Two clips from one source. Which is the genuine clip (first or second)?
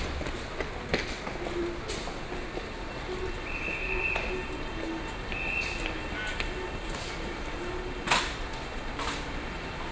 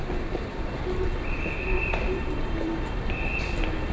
first